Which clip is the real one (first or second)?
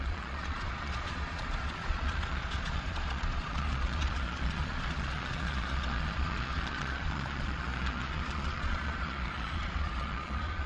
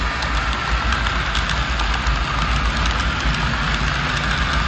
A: second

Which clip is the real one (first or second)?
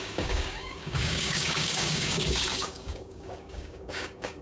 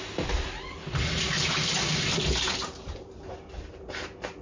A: second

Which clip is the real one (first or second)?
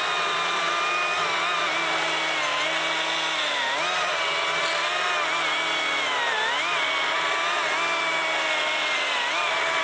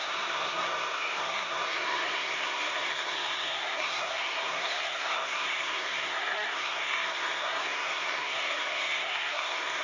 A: first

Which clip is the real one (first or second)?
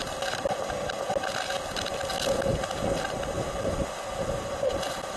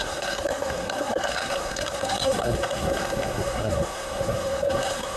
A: first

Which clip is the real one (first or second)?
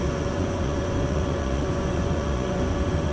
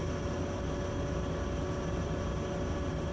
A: second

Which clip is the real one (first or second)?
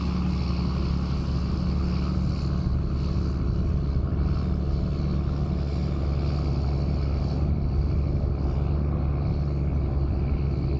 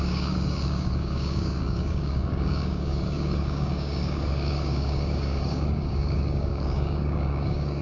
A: first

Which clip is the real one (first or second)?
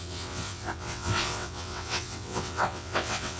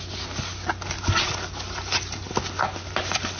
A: second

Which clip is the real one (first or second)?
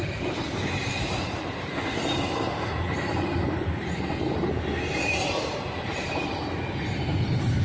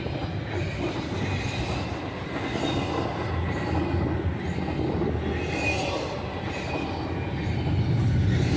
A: second